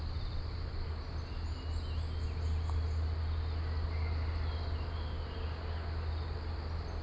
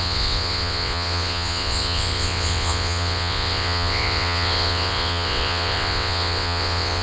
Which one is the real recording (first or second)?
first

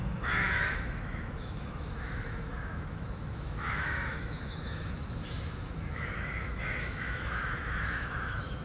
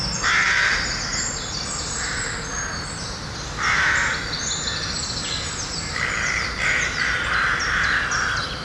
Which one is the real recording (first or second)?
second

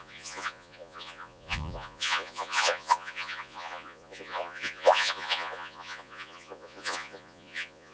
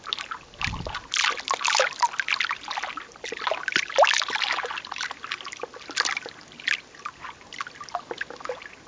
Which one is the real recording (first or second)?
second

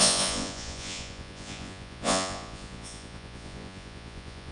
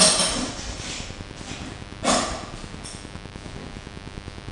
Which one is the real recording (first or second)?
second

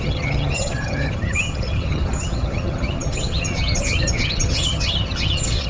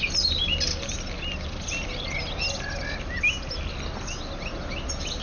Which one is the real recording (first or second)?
second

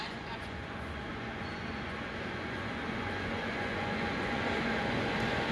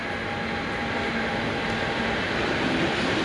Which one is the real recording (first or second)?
second